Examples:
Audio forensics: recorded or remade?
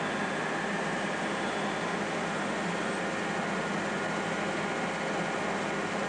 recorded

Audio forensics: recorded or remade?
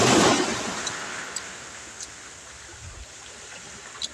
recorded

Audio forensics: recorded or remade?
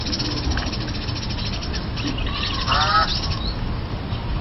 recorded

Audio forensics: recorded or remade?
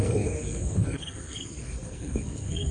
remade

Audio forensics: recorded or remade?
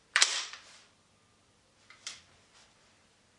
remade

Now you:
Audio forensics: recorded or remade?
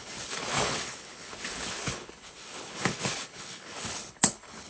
remade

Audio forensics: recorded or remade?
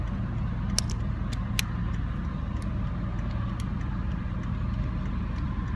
recorded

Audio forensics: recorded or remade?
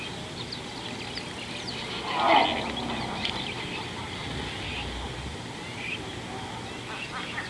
recorded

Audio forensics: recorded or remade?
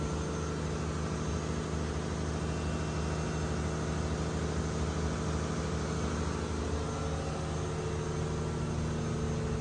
recorded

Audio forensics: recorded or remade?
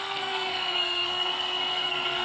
remade